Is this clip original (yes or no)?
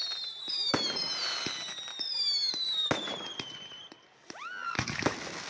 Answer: yes